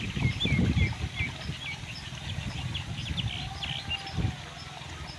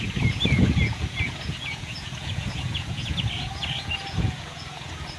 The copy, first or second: second